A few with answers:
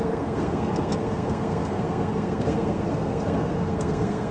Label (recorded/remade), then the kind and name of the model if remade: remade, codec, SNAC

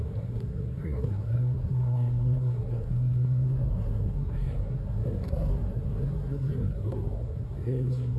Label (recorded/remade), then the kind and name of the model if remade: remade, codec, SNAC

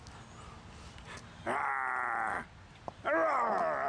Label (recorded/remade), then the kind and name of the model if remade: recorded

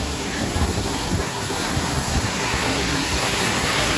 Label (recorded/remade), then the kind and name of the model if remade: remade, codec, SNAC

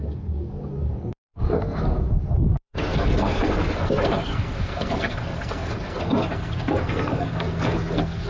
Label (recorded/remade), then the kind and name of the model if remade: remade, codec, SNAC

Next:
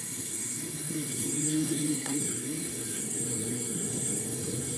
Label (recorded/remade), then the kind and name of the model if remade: remade, codec, SNAC